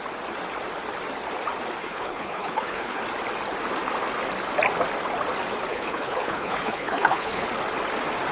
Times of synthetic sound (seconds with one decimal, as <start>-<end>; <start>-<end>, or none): 1.8-3.0; 5.7-7.5